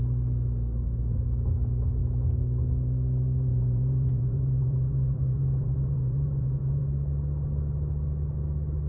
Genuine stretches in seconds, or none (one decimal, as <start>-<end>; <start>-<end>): 0.0-3.5; 6.8-8.9